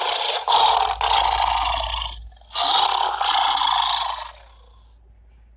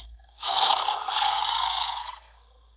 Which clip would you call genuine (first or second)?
first